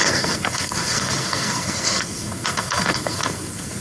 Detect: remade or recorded remade